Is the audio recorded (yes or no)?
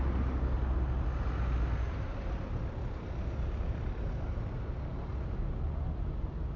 yes